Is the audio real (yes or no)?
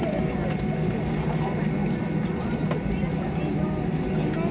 yes